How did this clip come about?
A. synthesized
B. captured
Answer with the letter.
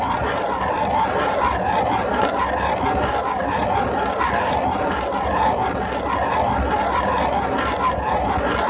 B